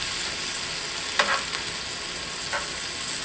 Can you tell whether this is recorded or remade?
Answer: recorded